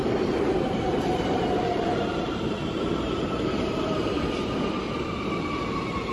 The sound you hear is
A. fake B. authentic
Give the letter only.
A